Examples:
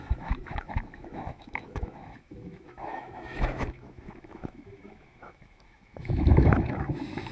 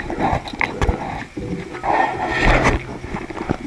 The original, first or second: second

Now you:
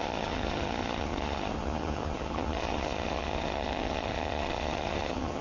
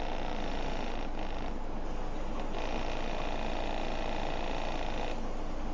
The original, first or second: second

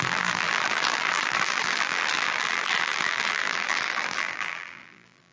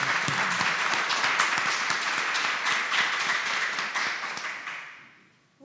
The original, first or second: second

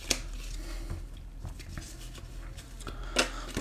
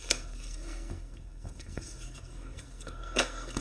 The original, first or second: first